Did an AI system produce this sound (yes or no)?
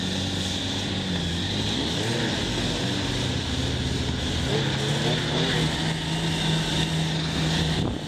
no